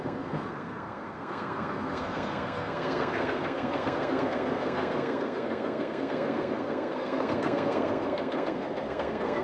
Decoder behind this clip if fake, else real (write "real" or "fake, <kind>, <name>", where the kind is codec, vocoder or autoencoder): fake, codec, SNAC